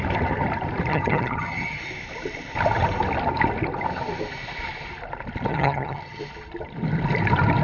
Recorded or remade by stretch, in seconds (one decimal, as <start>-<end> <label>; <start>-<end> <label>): 0.0-0.9 recorded; 0.9-1.8 remade; 1.8-5.5 recorded; 5.5-6.2 remade; 6.2-7.6 recorded

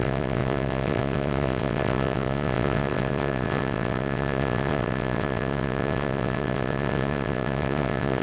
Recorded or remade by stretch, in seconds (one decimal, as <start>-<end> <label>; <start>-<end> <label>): 0.0-8.2 remade

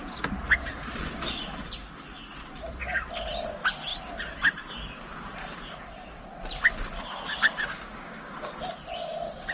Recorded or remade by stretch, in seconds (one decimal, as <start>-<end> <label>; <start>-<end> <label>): 0.0-7.7 recorded; 7.7-8.5 remade; 8.5-9.5 recorded

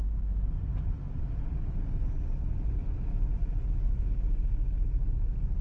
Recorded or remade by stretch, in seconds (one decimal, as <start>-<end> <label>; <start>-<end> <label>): 0.0-2.8 recorded; 2.8-4.1 remade; 4.1-5.6 recorded

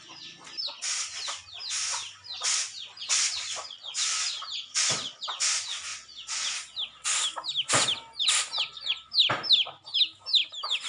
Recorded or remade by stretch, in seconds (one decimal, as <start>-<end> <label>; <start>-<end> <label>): 0.0-10.9 recorded